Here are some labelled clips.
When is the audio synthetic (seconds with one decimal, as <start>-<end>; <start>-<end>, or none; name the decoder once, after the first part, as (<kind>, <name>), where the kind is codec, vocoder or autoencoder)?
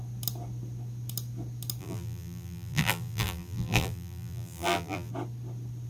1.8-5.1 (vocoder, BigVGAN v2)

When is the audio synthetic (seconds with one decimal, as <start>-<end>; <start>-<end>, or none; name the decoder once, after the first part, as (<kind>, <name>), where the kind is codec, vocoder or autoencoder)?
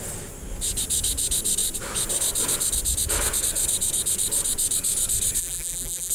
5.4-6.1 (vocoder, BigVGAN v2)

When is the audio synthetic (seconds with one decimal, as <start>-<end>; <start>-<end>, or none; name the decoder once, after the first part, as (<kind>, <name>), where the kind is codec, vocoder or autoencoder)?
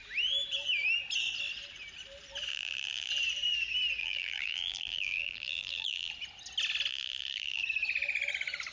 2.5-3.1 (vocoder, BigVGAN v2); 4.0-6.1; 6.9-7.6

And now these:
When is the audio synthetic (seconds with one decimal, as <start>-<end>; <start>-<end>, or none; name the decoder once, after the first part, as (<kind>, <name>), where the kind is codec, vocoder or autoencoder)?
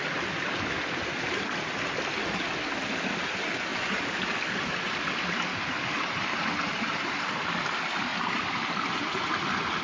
3.7-4.3 (vocoder, BigVGAN v2); 5.5-7.0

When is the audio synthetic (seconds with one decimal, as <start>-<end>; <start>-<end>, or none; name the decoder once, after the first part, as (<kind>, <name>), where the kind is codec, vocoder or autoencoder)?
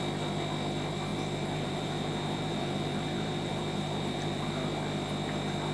1.1-4.5 (vocoder, BigVGAN v2)